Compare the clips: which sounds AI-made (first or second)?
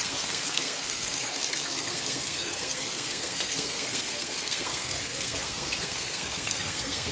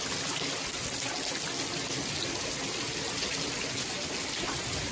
first